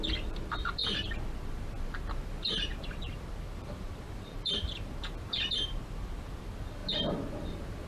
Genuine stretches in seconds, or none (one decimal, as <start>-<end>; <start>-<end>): 0.8-2.8; 6.8-7.9